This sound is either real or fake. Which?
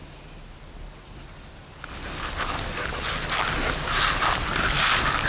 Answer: real